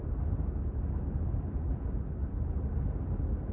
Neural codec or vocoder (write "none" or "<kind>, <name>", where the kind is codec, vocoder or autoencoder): none